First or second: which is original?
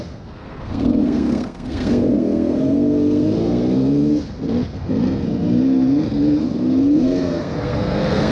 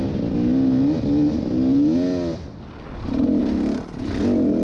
second